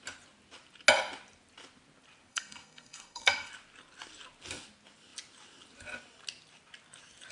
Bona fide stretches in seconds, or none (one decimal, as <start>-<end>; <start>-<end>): 0.0-2.3; 3.5-7.3